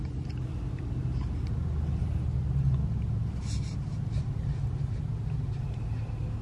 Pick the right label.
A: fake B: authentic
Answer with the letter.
B